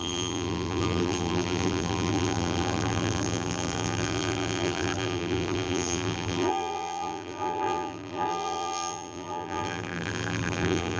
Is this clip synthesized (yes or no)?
yes